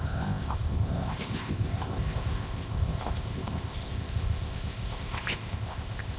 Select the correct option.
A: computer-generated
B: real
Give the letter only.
A